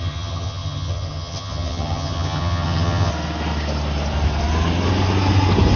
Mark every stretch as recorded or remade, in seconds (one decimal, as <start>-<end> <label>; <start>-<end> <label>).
0.0-3.1 remade; 3.1-5.8 recorded

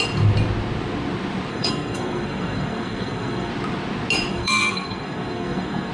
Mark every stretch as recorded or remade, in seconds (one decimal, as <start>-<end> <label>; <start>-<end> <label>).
0.0-1.5 recorded; 1.5-3.5 remade; 3.5-4.3 recorded; 4.3-5.9 remade

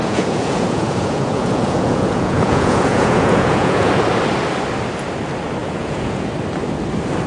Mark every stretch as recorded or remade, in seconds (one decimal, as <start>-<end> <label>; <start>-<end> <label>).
0.0-3.9 remade; 3.9-5.6 recorded; 5.6-6.3 remade; 6.3-7.3 recorded

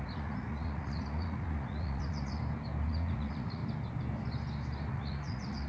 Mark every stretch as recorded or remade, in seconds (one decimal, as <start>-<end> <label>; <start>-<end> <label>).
0.0-2.4 remade; 2.4-2.9 recorded; 2.9-3.6 remade; 3.6-4.9 recorded; 4.9-5.7 remade

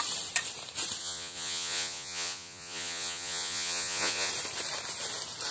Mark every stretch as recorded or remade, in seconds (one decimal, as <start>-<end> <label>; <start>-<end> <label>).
0.0-1.0 recorded; 1.0-4.3 remade; 4.3-5.5 recorded

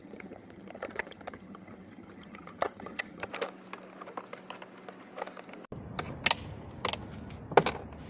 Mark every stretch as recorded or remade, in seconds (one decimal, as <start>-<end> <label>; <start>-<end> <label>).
0.0-3.3 remade; 3.3-8.1 recorded